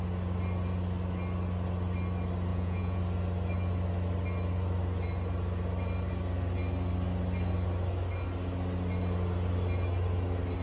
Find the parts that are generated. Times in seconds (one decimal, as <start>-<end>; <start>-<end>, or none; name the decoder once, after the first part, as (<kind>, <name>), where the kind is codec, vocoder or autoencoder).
2.5-3.0 (vocoder, Vocos)